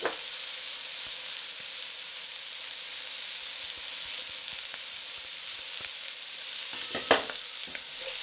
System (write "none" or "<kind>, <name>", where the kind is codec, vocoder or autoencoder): none